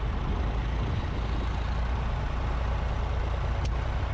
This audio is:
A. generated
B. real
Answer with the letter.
B